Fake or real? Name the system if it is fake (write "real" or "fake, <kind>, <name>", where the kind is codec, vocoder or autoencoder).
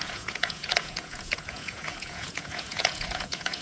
fake, vocoder, Vocos